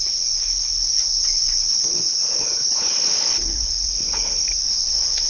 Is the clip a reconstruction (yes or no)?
yes